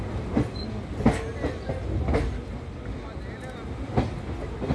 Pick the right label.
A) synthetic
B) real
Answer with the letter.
B